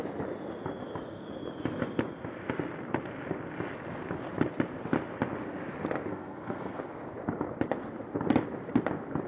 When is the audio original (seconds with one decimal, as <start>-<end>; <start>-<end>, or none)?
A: 0.0-6.1; 6.8-9.3